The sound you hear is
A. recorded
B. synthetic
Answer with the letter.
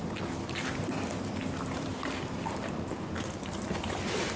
B